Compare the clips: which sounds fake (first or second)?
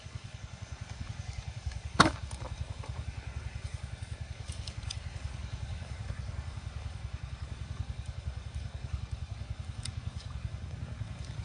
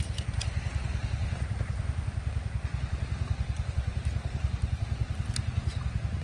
first